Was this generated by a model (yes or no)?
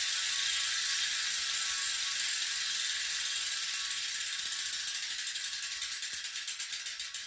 no